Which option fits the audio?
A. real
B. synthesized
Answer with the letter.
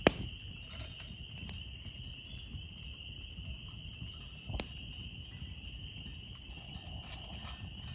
A